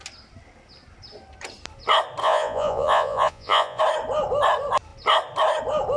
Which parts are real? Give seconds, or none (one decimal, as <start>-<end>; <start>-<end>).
0.0-2.2; 3.8-6.0